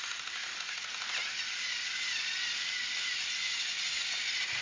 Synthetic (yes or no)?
no